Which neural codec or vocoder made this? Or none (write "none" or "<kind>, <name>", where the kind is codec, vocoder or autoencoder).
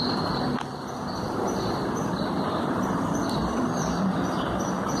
vocoder, BigVGAN v2